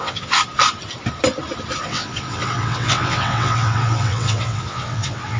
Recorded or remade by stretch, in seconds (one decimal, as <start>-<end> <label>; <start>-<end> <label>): 0.0-0.4 remade; 0.4-1.8 recorded; 1.8-5.4 remade